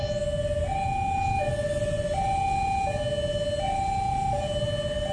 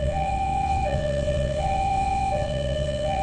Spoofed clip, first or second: second